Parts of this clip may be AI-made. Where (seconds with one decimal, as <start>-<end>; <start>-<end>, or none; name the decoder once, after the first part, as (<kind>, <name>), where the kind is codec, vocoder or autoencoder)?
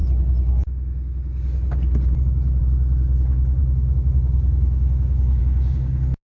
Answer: none